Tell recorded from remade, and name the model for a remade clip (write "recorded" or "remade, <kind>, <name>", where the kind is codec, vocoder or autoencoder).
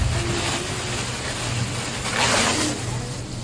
recorded